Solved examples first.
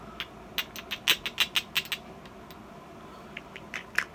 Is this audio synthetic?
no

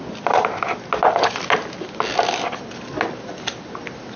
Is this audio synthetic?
no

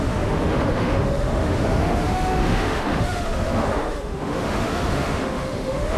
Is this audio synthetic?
yes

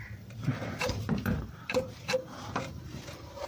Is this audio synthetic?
yes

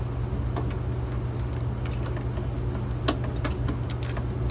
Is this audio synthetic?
no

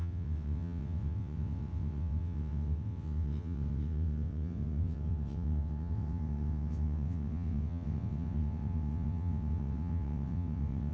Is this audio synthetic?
yes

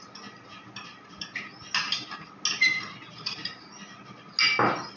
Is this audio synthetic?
no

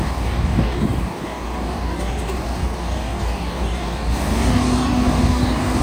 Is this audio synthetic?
yes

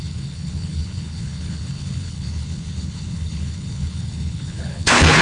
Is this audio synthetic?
yes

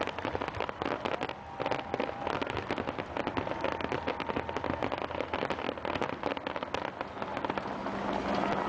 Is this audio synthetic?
no